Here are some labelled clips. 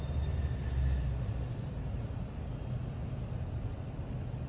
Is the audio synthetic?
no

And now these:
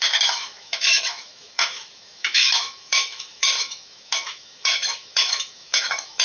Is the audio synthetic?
yes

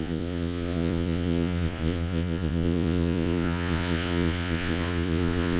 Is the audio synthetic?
yes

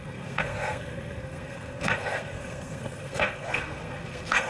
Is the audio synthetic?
yes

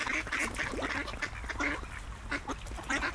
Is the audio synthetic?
no